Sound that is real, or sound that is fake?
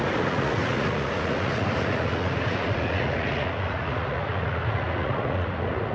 fake